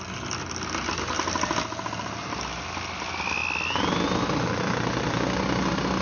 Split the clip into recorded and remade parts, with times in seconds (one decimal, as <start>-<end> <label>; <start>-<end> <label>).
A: 0.0-6.0 recorded